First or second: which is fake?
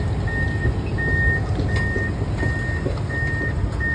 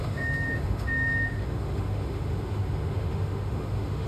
second